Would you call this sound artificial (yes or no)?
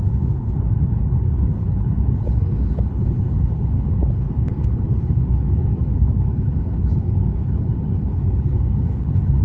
yes